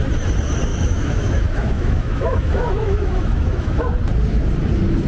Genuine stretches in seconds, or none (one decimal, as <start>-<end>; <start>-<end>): 0.0-0.7; 3.8-5.1

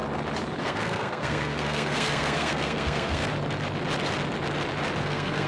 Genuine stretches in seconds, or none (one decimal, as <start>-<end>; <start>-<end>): 0.0-0.6; 3.2-5.0

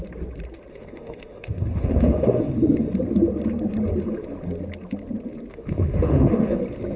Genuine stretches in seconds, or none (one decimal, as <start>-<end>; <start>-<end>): 0.0-0.7; 2.5-5.5; 6.6-7.0

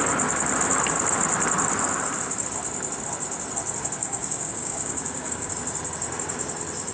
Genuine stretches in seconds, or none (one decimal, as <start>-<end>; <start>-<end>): 0.0-4.0; 5.5-6.9

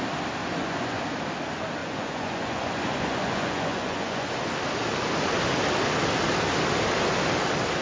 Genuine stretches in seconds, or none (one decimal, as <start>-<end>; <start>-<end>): 0.0-0.4; 1.0-1.8; 4.3-7.8

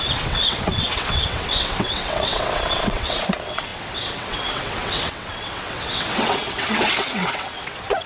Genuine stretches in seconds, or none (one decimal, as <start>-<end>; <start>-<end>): none

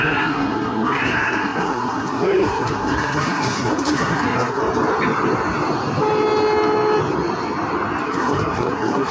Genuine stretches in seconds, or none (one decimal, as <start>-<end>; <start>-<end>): 4.6-8.0

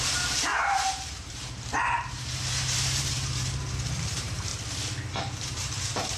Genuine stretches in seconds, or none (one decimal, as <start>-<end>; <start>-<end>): 4.5-5.1